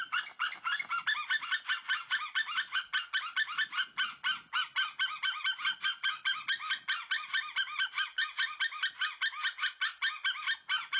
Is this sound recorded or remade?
recorded